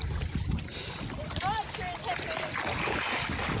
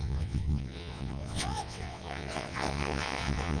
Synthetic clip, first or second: second